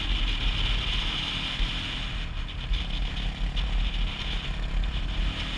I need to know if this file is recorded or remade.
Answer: recorded